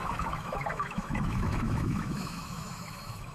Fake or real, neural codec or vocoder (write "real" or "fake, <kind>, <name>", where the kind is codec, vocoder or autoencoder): fake, autoencoder, DAC-VAE